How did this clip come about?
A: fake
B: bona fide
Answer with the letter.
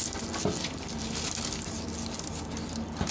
B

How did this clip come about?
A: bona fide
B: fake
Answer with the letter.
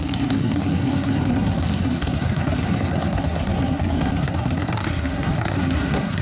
B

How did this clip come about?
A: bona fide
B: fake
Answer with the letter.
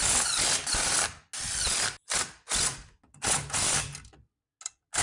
A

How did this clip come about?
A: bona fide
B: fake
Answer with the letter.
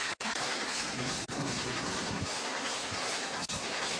B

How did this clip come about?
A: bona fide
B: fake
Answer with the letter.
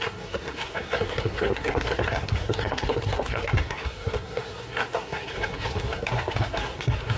B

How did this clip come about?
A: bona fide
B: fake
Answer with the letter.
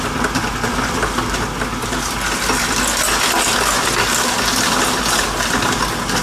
A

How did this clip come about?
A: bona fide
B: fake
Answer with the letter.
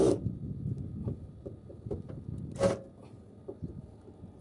A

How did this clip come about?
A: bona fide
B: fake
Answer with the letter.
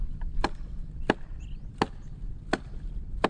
A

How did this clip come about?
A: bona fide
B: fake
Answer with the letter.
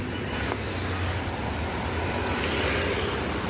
A